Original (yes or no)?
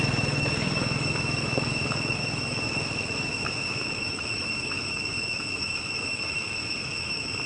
no